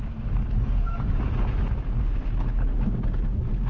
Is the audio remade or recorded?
recorded